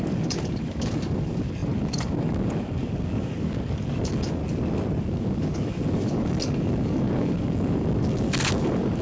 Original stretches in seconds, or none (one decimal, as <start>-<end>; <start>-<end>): 4.4-5.0